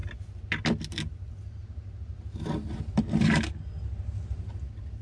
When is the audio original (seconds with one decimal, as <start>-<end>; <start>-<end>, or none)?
0.0-5.0